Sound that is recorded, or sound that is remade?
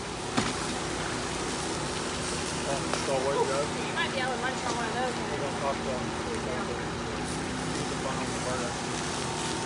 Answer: recorded